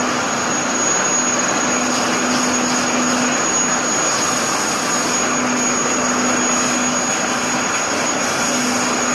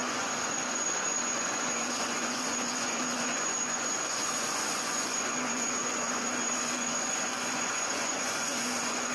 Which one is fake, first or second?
second